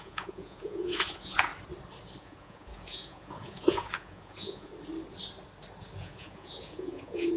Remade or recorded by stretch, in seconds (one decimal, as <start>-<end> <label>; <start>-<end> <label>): 0.0-1.5 remade; 1.5-2.2 recorded; 2.2-4.7 remade; 4.7-6.0 recorded; 6.0-7.4 remade

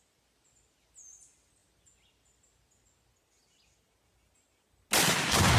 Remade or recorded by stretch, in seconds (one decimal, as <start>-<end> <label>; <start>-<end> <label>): 0.0-5.6 recorded

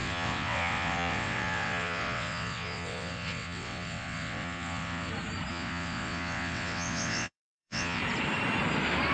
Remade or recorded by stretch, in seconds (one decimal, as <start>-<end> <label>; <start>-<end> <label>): 0.0-5.1 remade; 5.1-5.5 recorded; 5.5-8.0 remade; 8.0-9.1 recorded

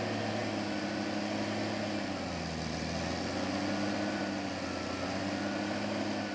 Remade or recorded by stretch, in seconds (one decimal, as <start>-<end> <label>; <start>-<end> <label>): 0.0-6.3 recorded

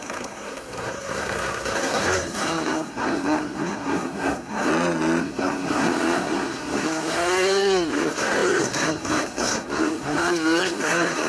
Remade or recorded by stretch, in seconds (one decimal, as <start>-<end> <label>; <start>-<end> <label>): 0.0-4.7 remade; 4.7-5.2 recorded; 5.2-11.3 remade

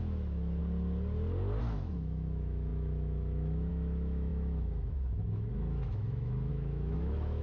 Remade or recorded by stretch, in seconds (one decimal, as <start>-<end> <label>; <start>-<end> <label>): 0.0-0.6 remade; 0.6-1.6 recorded; 1.6-7.4 remade

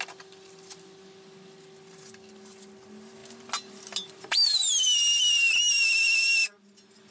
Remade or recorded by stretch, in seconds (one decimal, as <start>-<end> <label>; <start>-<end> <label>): 0.0-7.1 recorded

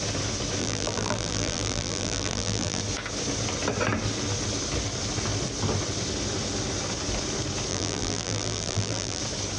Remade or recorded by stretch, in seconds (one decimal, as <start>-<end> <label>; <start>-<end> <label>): 0.0-0.6 recorded; 0.6-2.8 remade; 2.8-7.7 recorded; 7.7-9.2 remade; 9.2-9.6 recorded